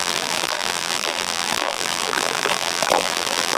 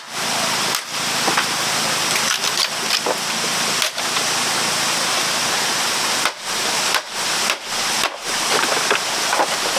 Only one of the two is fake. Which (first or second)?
first